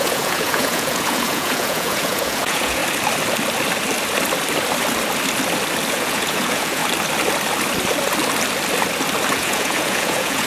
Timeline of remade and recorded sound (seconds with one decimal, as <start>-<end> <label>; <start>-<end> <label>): 0.0-2.8 remade; 2.8-5.9 recorded; 5.9-6.8 remade; 6.8-9.3 recorded; 9.3-10.5 remade